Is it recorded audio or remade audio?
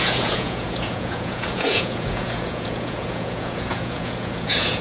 remade